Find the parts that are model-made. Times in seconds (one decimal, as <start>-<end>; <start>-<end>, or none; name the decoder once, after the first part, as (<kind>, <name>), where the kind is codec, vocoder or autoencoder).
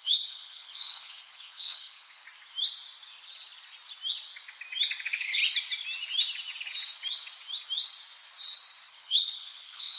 0.0-2.2 (codec, HILCodec); 5.0-5.4; 8.9-10.0